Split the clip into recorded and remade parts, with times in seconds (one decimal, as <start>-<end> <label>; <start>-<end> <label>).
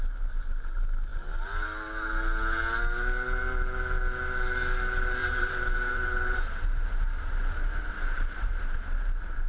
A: 0.0-5.2 recorded; 5.2-8.5 remade; 8.5-9.5 recorded